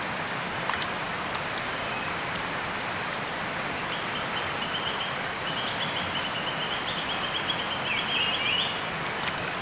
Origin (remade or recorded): recorded